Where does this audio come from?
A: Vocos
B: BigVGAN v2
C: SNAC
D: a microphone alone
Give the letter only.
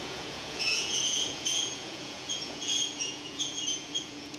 A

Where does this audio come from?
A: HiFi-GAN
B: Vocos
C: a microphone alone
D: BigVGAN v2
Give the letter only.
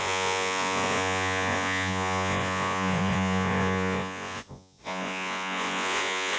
B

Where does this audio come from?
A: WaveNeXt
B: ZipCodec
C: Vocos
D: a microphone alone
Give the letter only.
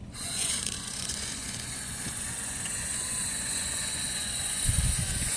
C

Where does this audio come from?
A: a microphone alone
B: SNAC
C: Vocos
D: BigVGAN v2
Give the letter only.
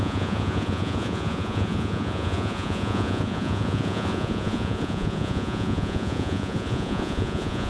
C